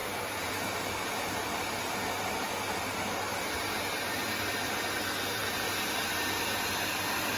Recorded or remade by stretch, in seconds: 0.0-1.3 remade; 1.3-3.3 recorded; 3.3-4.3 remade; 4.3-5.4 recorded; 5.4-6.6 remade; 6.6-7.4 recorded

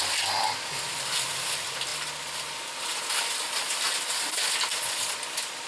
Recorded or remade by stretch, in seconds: 0.0-5.7 recorded

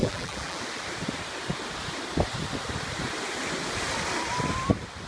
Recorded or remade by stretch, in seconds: 0.0-0.6 remade; 0.6-5.1 recorded

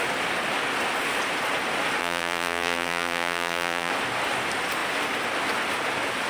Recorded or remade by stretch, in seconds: 0.0-2.0 recorded; 2.0-3.9 remade; 3.9-6.3 recorded